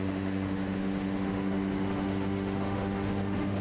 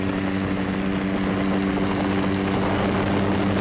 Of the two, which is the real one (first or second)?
second